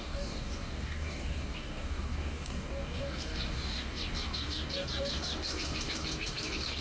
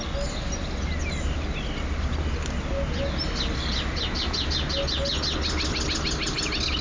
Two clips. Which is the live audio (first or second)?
second